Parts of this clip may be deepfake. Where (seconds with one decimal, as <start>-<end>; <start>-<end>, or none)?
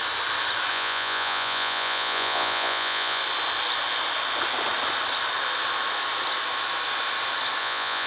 0.7-3.2; 7.6-8.1